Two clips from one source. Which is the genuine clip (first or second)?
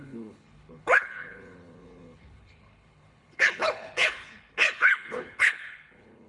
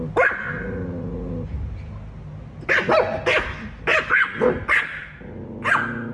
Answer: second